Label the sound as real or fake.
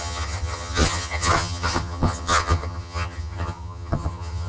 fake